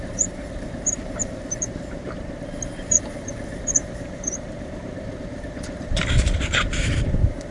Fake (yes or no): yes